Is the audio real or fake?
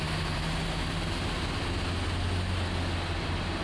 real